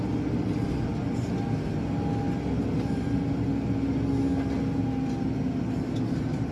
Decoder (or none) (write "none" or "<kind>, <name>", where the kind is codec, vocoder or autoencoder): none